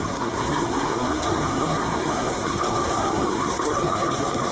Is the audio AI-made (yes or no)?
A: yes